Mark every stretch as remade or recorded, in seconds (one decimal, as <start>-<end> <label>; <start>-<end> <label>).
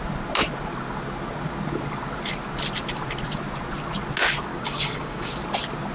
0.0-4.5 recorded; 4.5-5.3 remade; 5.3-5.9 recorded